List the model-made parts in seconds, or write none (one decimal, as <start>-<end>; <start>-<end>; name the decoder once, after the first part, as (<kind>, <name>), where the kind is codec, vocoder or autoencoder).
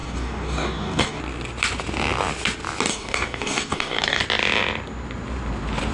0.0-1.2 (codec, DAC); 2.9-4.2